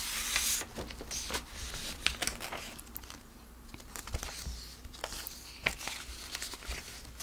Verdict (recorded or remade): recorded